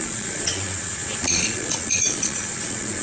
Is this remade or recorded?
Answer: remade